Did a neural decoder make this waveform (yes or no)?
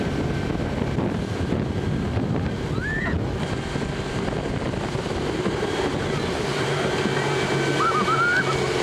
no